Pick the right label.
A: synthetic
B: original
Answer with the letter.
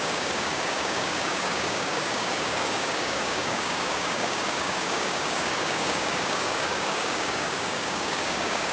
A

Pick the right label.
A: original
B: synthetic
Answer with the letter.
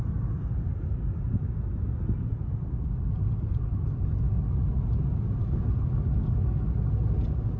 A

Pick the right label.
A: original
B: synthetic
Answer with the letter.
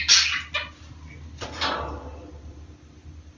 A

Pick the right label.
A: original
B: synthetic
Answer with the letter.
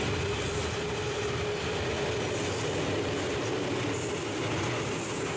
A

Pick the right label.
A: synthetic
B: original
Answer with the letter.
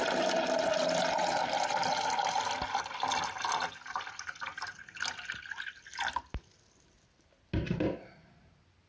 B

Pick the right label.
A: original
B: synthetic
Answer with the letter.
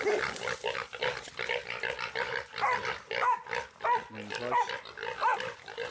A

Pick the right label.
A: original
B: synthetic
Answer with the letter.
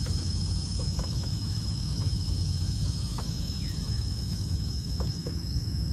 B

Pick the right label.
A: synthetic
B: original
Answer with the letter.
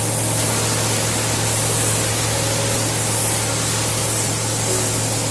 B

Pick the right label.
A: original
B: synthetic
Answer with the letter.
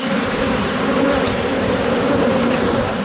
A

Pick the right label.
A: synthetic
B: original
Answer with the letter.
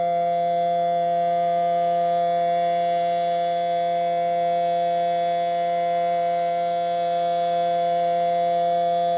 A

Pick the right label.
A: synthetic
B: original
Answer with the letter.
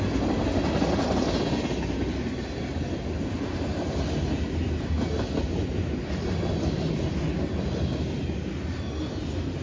B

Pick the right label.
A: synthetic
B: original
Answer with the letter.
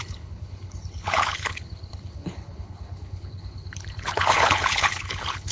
A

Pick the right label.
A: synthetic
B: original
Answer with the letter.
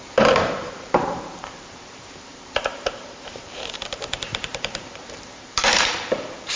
A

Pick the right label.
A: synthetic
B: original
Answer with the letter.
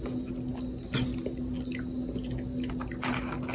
B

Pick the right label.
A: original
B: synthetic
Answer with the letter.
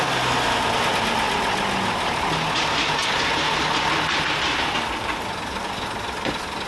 A